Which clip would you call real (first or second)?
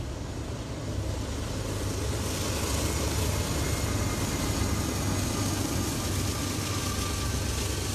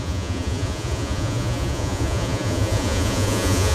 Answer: first